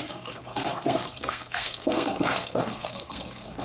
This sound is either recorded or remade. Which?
remade